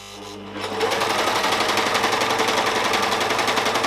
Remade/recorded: recorded